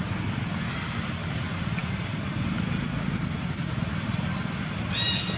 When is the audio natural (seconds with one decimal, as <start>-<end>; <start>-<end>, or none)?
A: 0.0-5.4